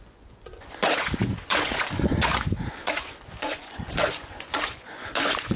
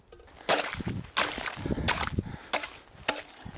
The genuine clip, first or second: second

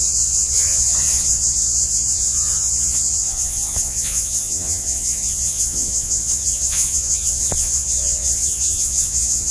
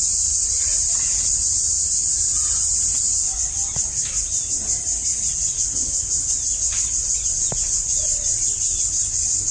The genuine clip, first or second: second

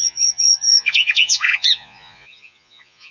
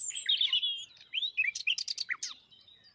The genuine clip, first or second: second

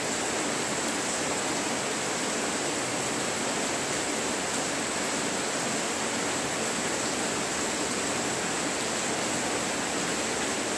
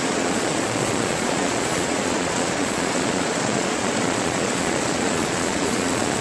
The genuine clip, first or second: first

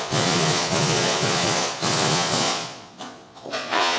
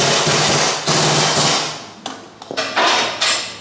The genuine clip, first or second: second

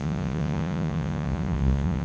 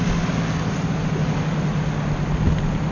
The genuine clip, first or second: second